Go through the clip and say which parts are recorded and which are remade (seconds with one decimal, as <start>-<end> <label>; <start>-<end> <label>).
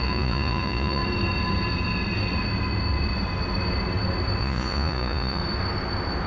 0.0-1.0 remade; 1.0-4.4 recorded; 4.4-5.4 remade; 5.4-6.3 recorded